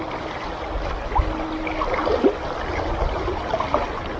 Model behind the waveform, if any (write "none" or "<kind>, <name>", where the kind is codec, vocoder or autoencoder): none